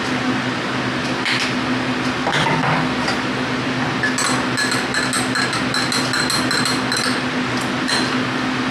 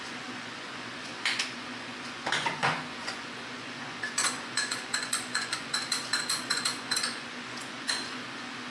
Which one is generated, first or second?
second